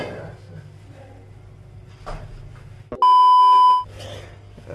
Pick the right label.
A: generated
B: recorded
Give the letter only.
B